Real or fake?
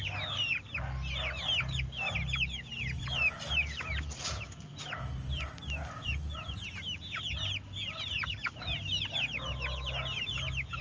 real